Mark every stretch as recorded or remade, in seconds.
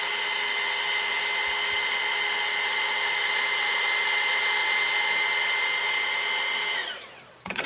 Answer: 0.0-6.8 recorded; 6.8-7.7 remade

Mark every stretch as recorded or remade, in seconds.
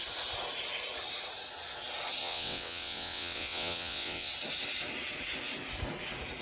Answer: 0.0-2.2 recorded; 2.2-4.3 remade; 4.3-6.4 recorded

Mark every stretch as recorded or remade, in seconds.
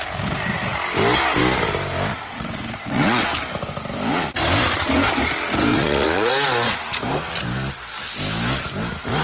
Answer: 0.0-2.1 recorded; 2.1-3.2 remade; 3.2-5.7 recorded; 5.7-6.3 remade; 6.3-9.2 recorded